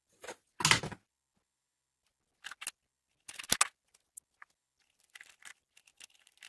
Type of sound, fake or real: real